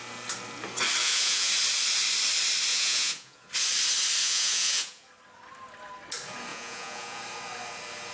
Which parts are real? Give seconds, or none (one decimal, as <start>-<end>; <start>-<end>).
0.0-1.0; 1.5-2.7; 3.5-4.2; 5.1-6.5; 7.2-8.1